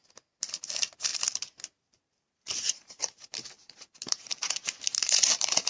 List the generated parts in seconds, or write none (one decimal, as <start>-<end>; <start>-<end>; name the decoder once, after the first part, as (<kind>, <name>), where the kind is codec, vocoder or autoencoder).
0.6-5.7 (vocoder, BigVGAN v2)